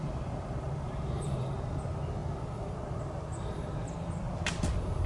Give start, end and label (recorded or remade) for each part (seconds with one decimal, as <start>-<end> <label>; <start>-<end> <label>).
0.0-1.3 remade; 1.3-5.1 recorded